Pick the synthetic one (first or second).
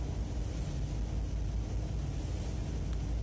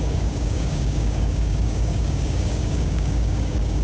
second